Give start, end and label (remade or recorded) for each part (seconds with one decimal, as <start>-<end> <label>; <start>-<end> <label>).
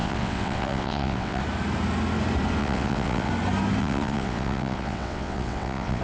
0.0-1.4 remade; 1.4-2.6 recorded; 2.6-3.3 remade; 3.3-3.8 recorded; 3.8-6.0 remade